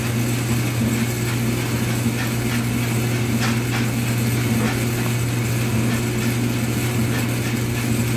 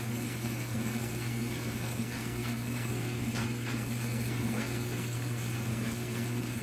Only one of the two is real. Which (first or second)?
first